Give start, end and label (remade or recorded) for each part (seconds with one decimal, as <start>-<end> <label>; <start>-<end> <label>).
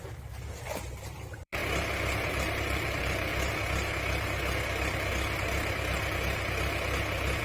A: 0.0-1.6 remade; 1.6-2.3 recorded; 2.3-3.3 remade; 3.3-7.4 recorded